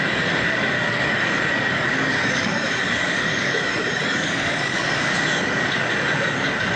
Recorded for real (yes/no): no